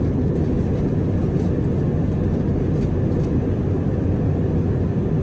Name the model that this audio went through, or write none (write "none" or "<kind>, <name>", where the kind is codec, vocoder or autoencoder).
none